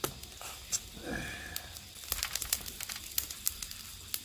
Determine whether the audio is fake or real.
real